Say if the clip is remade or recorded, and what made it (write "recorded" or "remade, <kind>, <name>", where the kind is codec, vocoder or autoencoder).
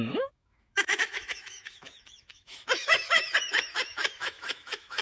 remade, autoencoder, DAC-VAE